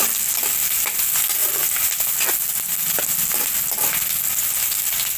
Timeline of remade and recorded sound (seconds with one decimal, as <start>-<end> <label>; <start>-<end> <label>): 0.0-5.2 recorded